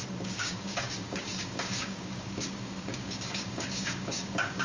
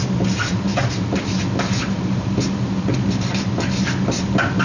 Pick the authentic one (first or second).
second